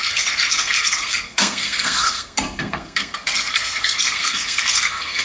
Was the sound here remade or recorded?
remade